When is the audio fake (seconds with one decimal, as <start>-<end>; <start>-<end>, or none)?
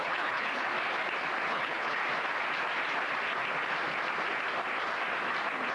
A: 0.0-0.7; 1.5-2.0